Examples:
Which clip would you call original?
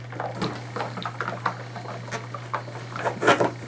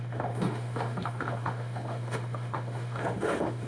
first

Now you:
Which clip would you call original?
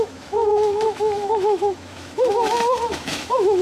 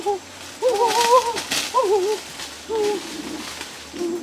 second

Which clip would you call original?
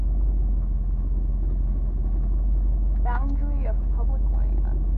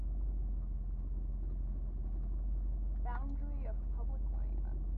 second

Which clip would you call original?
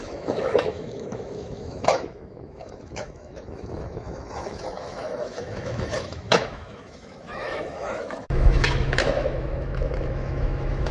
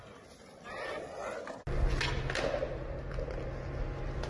second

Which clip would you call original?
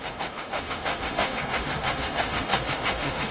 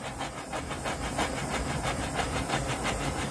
second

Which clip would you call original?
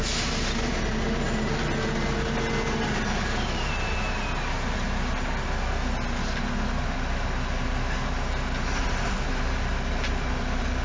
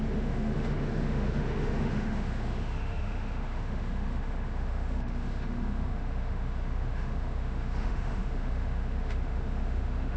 first